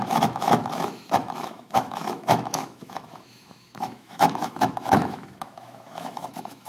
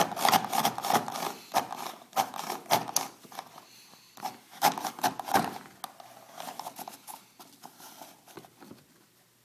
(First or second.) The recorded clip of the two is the second